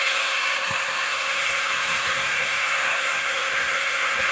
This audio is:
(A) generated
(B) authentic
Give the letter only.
A